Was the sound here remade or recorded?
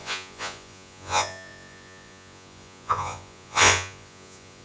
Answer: remade